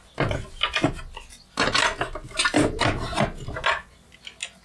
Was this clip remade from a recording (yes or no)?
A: no